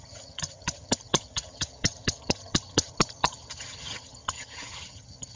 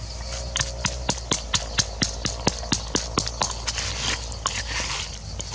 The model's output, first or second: first